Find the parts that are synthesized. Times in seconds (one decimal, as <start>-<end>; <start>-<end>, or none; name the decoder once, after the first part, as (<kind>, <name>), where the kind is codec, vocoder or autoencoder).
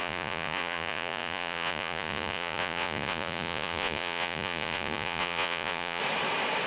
0.0-6.0 (vocoder, Vocos)